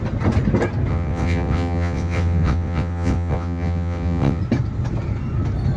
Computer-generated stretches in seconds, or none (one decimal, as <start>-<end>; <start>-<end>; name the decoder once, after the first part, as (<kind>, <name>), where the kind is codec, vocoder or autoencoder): 0.9-4.4 (vocoder, WaveNeXt)